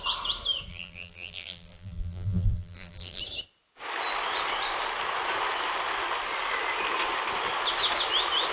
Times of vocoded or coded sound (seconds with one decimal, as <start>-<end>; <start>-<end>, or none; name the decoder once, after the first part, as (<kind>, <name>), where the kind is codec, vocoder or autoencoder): 0.7-3.2 (vocoder, BigVGAN v2)